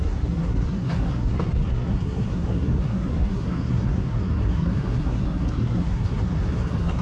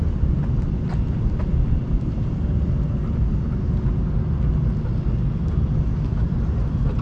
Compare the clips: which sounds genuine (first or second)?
second